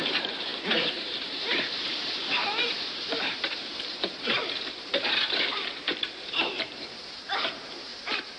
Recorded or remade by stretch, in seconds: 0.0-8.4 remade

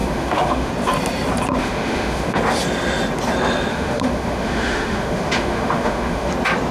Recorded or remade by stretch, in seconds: 0.0-0.7 remade; 0.7-1.6 recorded; 1.6-2.4 remade; 2.4-3.7 recorded; 3.7-6.3 remade; 6.3-6.7 recorded

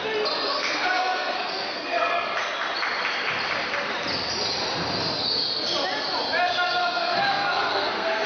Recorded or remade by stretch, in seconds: 0.0-0.5 recorded; 0.5-2.1 remade; 2.1-6.8 recorded; 6.8-8.3 remade